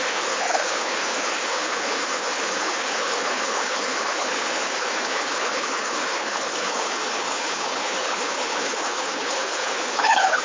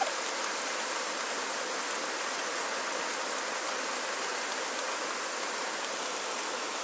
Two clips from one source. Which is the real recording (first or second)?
second